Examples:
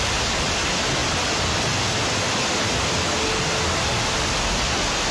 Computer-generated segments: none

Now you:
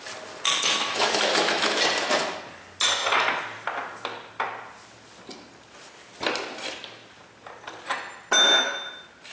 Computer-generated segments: 0.8-1.8 (autoencoder, DAC-VAE)

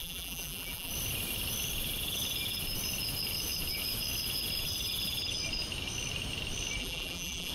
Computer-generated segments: 0.0-0.9 (vocoder, BigVGAN v2); 6.8-7.5

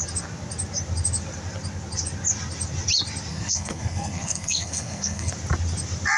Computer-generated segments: 3.3-5.3 (codec, SNAC)

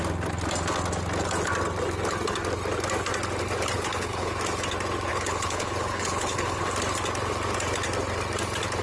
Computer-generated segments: 3.7-4.3 (codec, HILCodec); 5.1-6.7

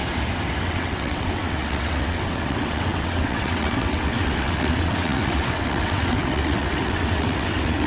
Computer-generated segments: 0.6-7.9 (vocoder, WaveNeXt)

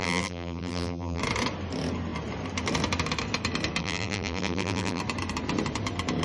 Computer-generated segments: 0.0-1.2 (vocoder, BigVGAN v2); 3.8-5.0